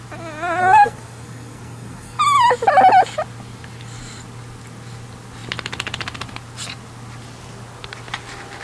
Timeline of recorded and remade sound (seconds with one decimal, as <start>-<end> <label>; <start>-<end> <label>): 0.0-0.6 recorded; 0.6-2.2 remade; 2.2-8.6 recorded